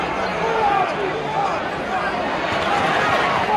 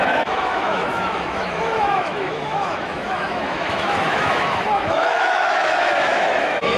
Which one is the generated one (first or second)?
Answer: second